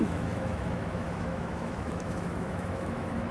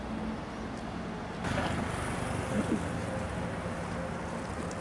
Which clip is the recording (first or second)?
second